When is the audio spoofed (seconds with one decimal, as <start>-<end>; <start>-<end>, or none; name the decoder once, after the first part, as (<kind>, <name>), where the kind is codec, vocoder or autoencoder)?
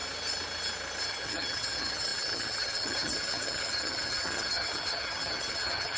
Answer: 1.1-6.0 (vocoder, HiFi-GAN)